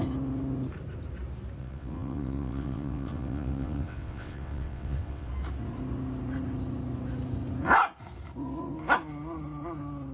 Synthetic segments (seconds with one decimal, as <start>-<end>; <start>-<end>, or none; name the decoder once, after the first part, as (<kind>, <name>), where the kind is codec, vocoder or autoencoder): 1.6-5.3 (vocoder, WaveNeXt)